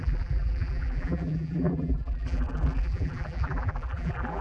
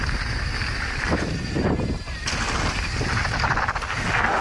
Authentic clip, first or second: second